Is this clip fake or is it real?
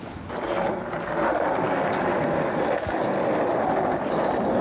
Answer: real